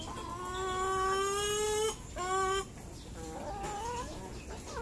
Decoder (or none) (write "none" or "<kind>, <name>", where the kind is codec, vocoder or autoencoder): none